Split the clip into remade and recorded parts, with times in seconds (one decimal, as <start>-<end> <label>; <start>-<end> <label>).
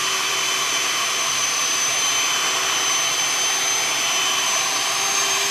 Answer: 0.0-1.2 recorded; 1.2-1.9 remade; 1.9-4.2 recorded; 4.2-5.5 remade